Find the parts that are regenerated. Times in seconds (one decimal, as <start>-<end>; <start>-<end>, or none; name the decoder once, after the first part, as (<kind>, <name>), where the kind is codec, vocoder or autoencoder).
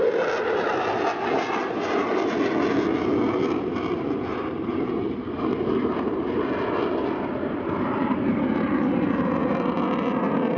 4.3-4.9 (vocoder, BigVGAN v2); 5.8-6.4; 7.3-8.4